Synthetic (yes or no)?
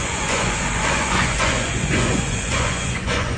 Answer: yes